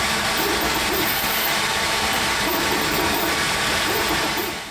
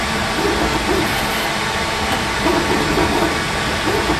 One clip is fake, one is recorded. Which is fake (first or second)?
first